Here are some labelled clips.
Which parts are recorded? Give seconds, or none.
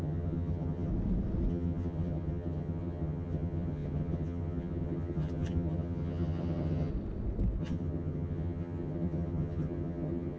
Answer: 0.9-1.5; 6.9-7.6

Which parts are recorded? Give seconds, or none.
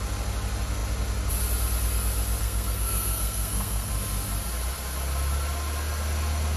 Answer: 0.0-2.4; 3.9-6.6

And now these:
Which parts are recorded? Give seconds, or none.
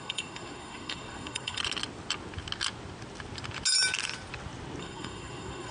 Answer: 1.6-4.8